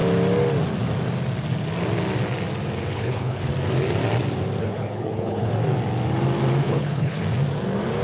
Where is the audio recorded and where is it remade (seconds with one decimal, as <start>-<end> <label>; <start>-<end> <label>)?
0.0-2.9 recorded; 2.9-3.5 remade; 3.5-4.6 recorded; 4.6-5.5 remade; 5.5-6.6 recorded; 6.6-7.2 remade; 7.2-8.0 recorded